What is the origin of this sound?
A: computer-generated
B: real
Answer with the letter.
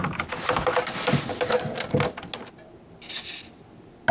B